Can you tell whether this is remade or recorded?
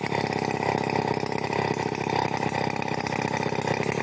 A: recorded